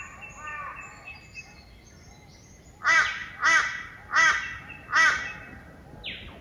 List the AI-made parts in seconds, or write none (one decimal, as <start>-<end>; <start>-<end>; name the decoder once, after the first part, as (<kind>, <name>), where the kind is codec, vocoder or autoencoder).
none